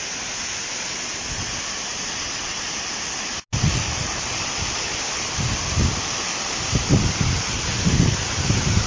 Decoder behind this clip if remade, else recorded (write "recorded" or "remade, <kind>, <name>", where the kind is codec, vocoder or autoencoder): recorded